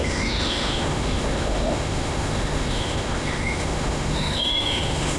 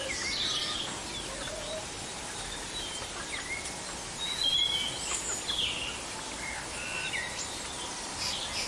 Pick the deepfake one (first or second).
first